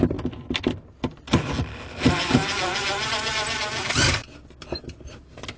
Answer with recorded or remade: recorded